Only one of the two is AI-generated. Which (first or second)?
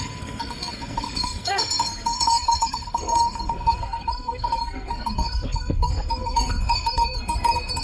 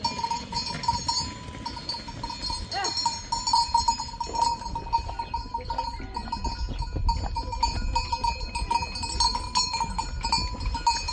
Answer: first